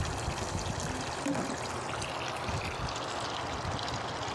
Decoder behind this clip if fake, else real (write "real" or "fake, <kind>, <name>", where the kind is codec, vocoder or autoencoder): real